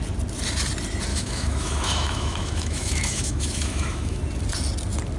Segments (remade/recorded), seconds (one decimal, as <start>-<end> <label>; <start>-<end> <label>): 0.0-1.1 recorded; 1.1-4.2 remade; 4.2-5.2 recorded